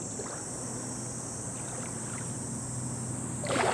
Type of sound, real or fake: real